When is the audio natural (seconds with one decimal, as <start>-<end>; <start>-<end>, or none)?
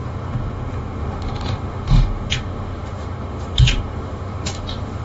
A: none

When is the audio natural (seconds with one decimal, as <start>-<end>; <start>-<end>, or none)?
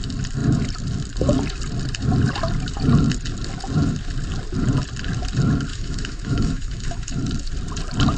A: 0.0-5.7; 7.2-8.2